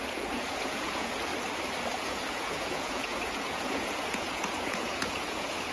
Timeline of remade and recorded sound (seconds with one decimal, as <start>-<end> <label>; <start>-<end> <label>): 0.0-1.3 remade; 1.3-1.9 recorded; 1.9-5.7 remade